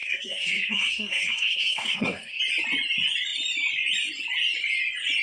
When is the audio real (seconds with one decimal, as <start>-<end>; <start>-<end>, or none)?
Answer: 2.4-5.2